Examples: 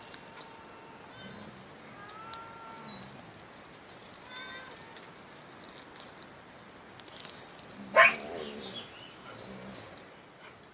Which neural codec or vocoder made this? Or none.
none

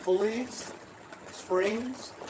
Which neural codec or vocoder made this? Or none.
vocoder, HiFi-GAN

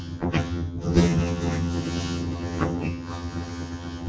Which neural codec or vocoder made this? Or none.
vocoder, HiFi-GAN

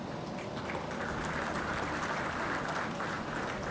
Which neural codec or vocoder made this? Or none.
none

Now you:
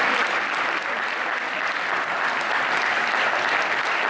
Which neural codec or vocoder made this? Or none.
none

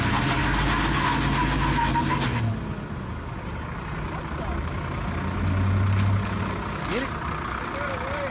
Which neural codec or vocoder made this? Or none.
none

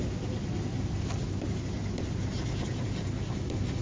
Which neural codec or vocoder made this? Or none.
none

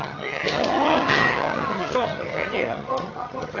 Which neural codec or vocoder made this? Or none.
vocoder, HiFi-GAN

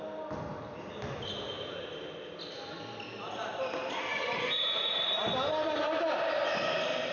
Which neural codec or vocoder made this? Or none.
none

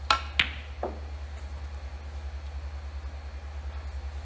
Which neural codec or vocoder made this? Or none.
none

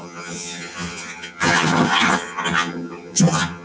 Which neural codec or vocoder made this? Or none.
vocoder, HiFi-GAN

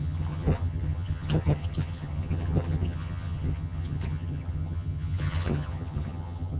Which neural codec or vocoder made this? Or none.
vocoder, HiFi-GAN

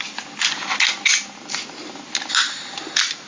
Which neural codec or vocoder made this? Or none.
none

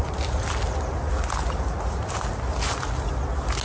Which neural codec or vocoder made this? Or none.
none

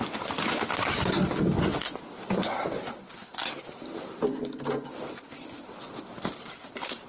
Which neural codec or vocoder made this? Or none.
none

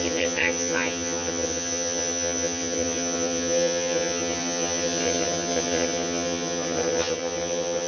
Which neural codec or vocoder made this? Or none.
vocoder, HiFi-GAN